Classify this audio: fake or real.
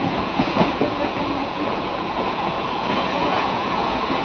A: fake